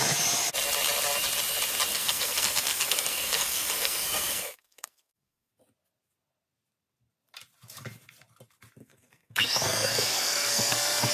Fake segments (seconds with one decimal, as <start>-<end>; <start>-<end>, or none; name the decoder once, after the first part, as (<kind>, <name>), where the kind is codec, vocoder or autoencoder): 1.9-5.5 (codec, SNAC); 8.8-11.1